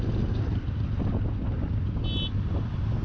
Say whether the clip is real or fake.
real